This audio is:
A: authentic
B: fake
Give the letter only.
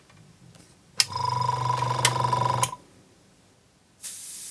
A